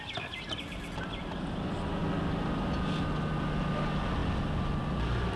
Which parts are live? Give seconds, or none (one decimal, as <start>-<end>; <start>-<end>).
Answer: 0.0-5.4